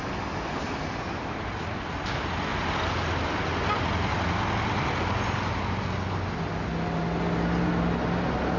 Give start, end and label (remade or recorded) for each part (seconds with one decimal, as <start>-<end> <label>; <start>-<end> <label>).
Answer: 0.0-8.6 recorded

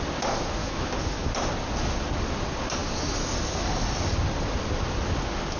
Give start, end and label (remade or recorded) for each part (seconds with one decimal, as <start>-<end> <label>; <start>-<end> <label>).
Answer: 0.0-0.6 recorded; 0.6-1.3 remade; 1.3-5.6 recorded

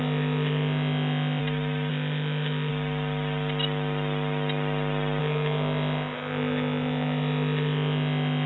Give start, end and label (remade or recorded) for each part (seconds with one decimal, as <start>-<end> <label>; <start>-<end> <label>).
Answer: 0.0-1.4 remade; 1.4-1.9 recorded; 1.9-2.7 remade; 2.7-5.2 recorded; 5.2-8.5 remade

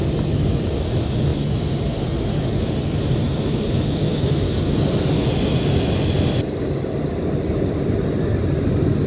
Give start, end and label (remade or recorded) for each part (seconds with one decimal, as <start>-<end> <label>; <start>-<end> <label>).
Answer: 0.0-9.1 recorded

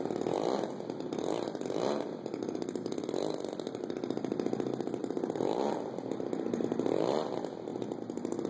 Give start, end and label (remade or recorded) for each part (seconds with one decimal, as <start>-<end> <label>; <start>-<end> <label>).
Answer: 0.0-8.5 recorded

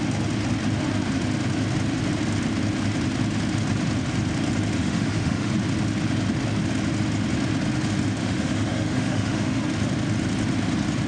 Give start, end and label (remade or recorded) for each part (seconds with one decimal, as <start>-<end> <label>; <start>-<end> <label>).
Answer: 0.0-4.8 recorded; 4.8-5.5 remade; 5.5-8.2 recorded; 8.2-9.6 remade; 9.6-11.1 recorded